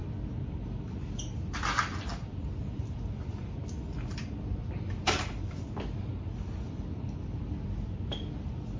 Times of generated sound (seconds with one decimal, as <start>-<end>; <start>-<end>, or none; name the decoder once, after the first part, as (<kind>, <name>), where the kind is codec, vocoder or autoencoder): 2.1-3.4 (vocoder, BigVGAN v2)